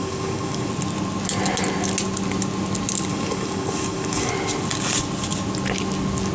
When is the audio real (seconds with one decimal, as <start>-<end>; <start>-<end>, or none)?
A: 0.7-3.1; 4.3-6.3

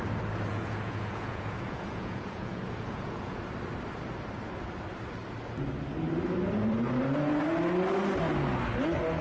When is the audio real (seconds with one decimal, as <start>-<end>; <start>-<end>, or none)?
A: 0.0-0.5; 3.4-9.2

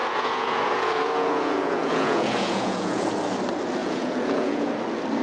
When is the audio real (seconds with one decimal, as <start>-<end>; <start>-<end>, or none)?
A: 3.1-3.8; 4.7-5.2

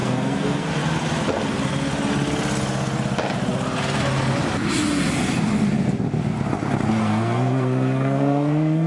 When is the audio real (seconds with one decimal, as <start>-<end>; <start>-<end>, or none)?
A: 0.7-7.0